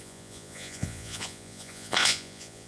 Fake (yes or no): yes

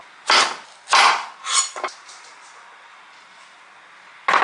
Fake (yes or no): no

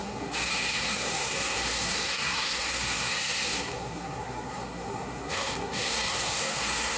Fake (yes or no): yes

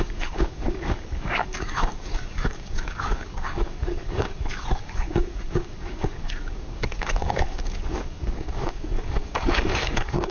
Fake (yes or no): yes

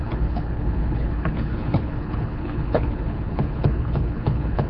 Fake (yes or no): yes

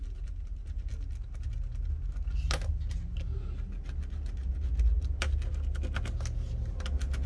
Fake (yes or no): no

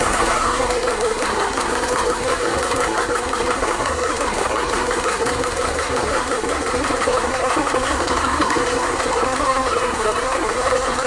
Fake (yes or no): yes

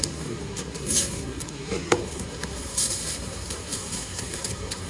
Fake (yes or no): yes